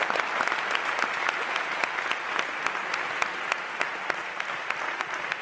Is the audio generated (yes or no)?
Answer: no